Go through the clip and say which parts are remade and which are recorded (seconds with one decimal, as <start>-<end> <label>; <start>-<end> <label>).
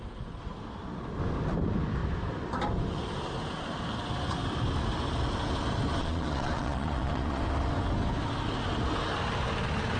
0.0-6.0 recorded; 6.0-7.4 remade; 7.4-10.0 recorded